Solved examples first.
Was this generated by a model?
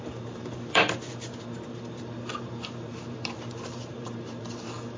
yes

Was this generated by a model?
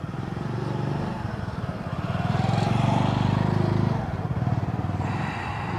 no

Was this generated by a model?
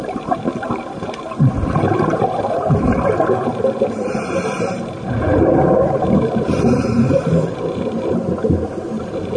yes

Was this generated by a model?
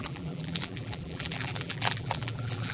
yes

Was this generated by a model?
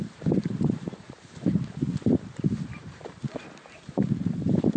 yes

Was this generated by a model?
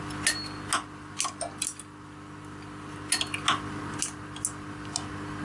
no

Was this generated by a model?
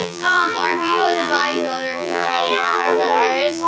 yes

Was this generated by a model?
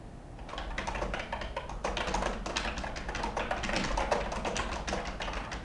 no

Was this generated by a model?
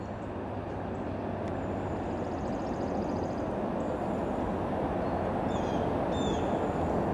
no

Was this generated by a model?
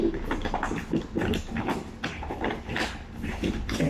no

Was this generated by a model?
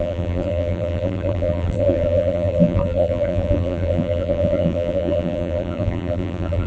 yes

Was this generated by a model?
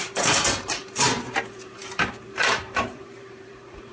yes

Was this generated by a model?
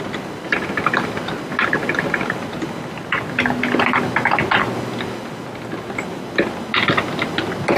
no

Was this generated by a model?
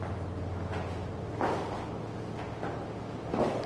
no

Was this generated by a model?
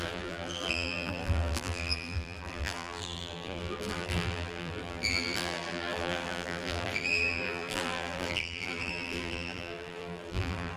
yes